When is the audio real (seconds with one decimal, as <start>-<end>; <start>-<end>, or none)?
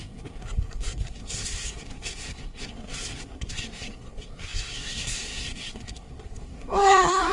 none